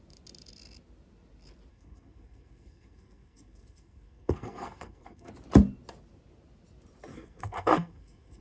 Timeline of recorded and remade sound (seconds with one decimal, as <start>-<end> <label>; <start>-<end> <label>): 0.0-1.7 recorded; 1.7-5.3 remade; 5.3-7.1 recorded; 7.1-8.4 remade